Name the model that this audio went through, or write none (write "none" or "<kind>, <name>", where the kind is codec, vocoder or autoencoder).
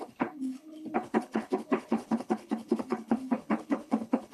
codec, HILCodec